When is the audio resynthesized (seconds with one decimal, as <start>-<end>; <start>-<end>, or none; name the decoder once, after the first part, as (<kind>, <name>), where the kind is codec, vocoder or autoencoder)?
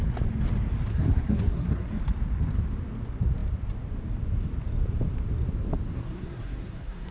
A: 0.9-2.0 (codec, SNAC); 5.9-7.1